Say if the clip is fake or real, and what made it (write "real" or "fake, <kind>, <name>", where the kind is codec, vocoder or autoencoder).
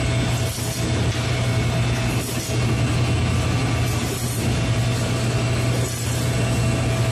real